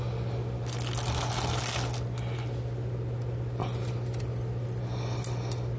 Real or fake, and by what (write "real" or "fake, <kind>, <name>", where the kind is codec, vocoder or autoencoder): real